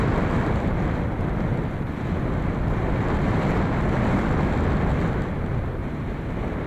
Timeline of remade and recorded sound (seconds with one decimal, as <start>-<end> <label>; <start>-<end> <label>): 0.0-5.8 recorded; 5.8-6.3 remade; 6.3-6.7 recorded